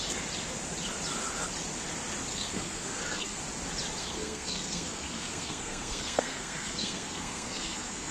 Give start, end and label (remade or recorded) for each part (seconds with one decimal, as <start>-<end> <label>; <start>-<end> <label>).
0.0-2.3 recorded; 2.3-3.4 remade; 3.4-4.0 recorded; 4.0-8.1 remade